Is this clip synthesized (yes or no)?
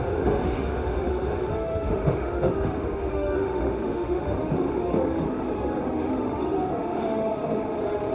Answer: yes